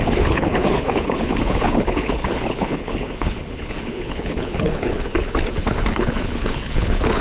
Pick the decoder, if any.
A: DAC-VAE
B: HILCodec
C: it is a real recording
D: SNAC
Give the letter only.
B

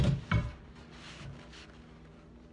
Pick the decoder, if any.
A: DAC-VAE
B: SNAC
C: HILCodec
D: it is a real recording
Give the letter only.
D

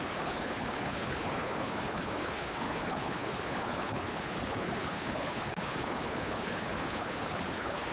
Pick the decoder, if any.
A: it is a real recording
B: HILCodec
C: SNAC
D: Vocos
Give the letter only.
B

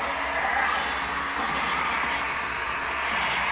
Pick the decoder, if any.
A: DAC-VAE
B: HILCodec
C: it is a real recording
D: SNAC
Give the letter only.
C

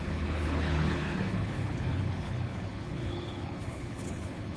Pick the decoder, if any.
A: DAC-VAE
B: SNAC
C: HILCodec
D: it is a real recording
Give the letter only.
C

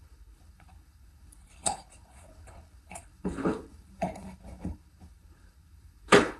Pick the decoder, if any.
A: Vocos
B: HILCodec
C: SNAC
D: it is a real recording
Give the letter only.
B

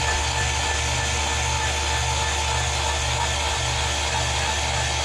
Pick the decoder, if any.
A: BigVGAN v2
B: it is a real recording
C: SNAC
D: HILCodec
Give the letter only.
B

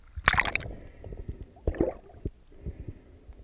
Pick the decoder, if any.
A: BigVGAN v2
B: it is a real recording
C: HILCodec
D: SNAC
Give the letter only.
B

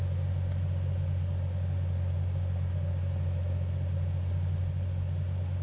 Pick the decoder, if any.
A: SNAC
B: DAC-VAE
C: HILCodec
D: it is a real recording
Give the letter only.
D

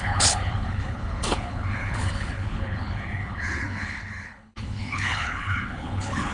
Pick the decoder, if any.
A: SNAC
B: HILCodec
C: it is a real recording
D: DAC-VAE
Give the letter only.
B